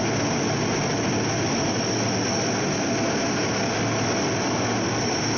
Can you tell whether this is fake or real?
real